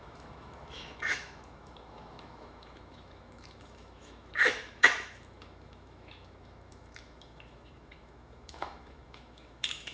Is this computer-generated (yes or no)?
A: yes